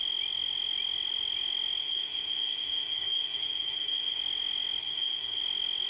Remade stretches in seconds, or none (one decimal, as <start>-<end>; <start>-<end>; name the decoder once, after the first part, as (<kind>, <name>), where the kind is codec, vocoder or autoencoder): 1.8-4.2 (codec, SNAC); 4.8-5.4